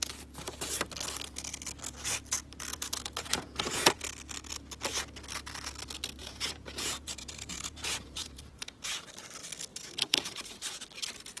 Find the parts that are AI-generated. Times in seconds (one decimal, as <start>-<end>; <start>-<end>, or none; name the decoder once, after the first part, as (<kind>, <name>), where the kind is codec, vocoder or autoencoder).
2.7-4.0 (vocoder, Vocos); 6.2-9.1; 9.7-10.8